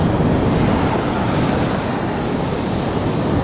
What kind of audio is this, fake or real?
real